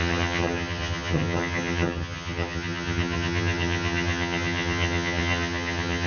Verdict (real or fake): fake